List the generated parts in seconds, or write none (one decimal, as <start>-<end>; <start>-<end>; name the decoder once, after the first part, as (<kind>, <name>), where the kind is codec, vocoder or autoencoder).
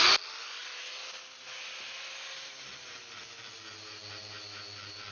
none